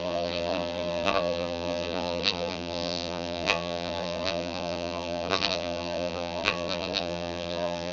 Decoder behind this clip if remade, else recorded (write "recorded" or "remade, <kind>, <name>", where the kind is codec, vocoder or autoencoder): remade, vocoder, BigVGAN v2